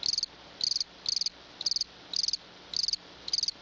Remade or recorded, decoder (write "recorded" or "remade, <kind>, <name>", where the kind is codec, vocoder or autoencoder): recorded